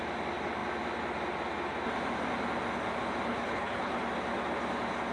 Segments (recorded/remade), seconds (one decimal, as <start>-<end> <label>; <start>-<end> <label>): 0.0-3.3 recorded; 3.3-4.0 remade; 4.0-5.1 recorded